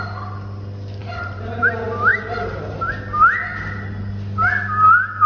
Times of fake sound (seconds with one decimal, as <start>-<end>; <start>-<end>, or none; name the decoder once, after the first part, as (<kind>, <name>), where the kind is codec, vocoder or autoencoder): 1.0-1.6 (vocoder, BigVGAN v2)